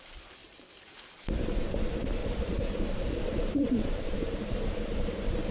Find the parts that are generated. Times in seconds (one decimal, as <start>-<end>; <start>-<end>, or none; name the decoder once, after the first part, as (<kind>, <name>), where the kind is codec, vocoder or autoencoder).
0.4-1.8 (vocoder, BigVGAN v2); 2.2-5.5